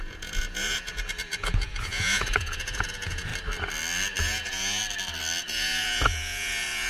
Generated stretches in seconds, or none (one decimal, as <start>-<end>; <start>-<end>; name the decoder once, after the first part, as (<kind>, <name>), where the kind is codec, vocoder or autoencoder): 0.0-3.3 (vocoder, Vocos); 4.2-4.8; 5.4-6.9